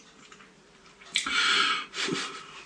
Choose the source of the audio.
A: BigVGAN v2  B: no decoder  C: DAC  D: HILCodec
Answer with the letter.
A